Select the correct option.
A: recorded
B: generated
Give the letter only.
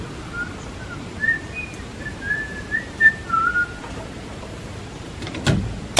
A